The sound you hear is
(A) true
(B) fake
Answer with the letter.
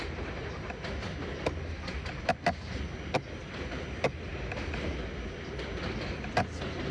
A